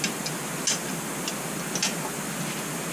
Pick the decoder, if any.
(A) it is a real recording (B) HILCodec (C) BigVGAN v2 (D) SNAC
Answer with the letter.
A